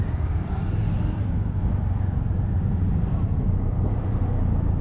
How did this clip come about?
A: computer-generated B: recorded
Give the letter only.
A